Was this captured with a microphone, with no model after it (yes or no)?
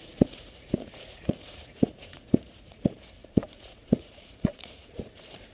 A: no